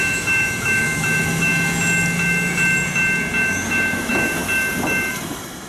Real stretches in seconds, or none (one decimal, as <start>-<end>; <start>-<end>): 1.5-3.4; 4.4-5.1